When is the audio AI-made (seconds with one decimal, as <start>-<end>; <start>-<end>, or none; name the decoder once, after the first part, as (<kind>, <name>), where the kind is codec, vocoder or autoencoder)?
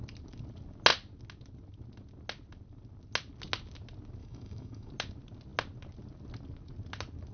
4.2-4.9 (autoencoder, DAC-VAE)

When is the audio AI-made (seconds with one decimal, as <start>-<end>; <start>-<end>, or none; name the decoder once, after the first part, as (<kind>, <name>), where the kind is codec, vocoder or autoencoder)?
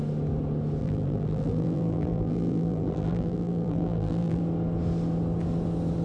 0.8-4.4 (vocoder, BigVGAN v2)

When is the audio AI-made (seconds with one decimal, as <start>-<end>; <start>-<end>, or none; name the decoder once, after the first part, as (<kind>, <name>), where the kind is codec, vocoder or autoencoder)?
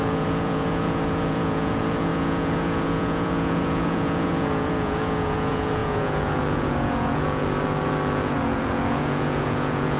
0.0-10.0 (vocoder, Vocos)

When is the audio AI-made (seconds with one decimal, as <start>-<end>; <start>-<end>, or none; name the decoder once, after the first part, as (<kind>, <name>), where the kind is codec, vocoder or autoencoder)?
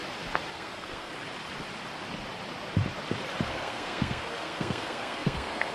0.5-1.1 (codec, SNAC); 3.5-5.7